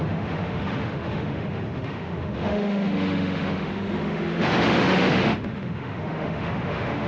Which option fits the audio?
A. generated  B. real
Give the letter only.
A